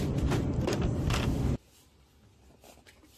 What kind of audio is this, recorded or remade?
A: recorded